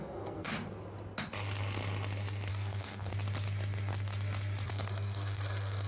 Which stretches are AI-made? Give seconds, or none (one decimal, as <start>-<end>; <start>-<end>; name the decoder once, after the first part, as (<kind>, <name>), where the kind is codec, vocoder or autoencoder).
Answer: 0.0-0.5 (codec, SNAC); 2.5-3.1; 4.7-5.9

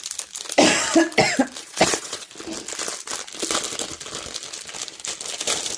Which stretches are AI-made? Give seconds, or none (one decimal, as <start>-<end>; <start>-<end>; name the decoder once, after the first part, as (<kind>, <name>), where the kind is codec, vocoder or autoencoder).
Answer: 1.6-2.3 (vocoder, WaveNeXt)

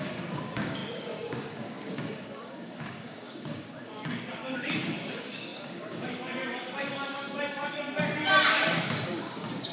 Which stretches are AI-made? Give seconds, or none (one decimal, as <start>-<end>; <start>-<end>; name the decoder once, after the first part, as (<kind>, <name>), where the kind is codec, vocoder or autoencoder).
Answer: 0.0-7.8 (codec, DAC); 8.5-9.7

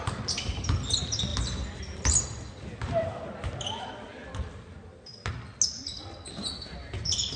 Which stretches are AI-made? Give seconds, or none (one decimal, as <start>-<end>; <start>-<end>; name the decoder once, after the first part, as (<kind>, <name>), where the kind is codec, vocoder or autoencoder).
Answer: none

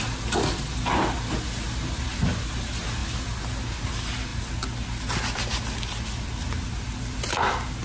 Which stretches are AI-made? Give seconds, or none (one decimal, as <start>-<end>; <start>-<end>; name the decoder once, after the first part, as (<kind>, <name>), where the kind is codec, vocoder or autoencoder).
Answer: none

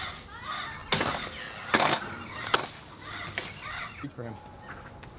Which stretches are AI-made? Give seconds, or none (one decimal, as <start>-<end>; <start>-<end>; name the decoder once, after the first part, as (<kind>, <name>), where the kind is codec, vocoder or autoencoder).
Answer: none

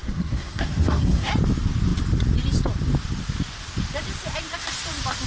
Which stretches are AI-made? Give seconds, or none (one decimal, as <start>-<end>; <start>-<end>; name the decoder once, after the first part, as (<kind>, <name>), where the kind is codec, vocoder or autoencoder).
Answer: 0.0-1.3 (codec, SNAC)

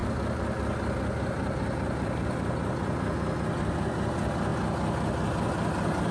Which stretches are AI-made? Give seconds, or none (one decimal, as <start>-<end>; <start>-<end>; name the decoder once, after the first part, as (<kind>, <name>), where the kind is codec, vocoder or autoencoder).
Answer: none